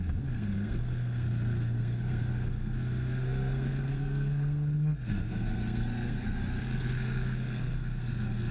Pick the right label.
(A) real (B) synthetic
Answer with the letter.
B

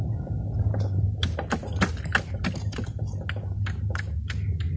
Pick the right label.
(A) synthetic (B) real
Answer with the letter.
B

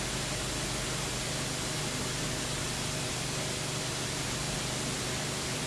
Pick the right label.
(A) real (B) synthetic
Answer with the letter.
A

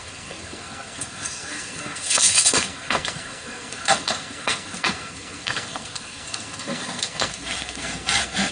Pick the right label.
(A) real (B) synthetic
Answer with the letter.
B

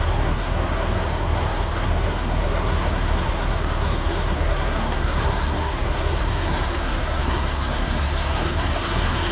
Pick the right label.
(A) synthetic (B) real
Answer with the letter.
A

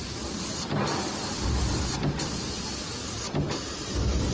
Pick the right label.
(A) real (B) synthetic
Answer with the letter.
A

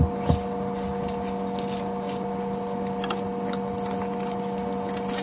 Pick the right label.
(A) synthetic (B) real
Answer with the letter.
B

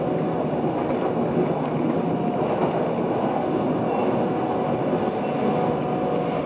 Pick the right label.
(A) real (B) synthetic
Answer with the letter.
A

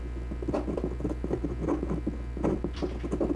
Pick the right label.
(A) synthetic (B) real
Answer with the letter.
B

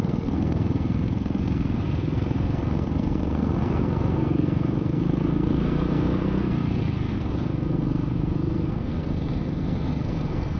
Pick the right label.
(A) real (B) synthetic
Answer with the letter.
B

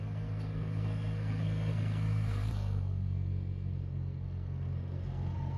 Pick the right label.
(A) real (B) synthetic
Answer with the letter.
B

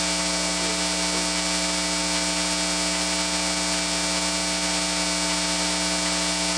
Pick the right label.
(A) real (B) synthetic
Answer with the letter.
A